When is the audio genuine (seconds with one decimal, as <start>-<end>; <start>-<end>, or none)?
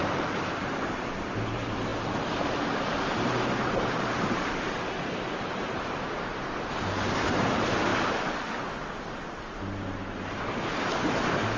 7.9-11.6